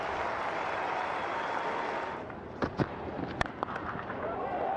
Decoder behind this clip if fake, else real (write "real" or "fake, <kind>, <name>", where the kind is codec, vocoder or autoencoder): real